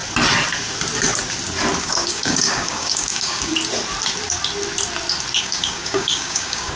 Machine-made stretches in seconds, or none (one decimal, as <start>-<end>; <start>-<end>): 1.8-3.5; 5.4-6.8